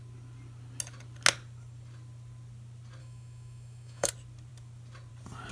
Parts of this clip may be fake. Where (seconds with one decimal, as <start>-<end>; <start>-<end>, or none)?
3.0-4.1